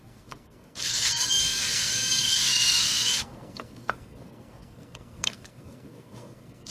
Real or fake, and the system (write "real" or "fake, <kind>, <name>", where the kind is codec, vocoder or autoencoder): fake, codec, SNAC